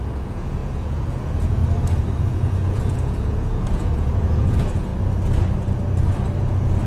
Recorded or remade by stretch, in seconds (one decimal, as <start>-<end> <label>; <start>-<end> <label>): 0.0-1.6 remade; 1.6-2.2 recorded; 2.2-4.9 remade; 4.9-6.4 recorded; 6.4-6.9 remade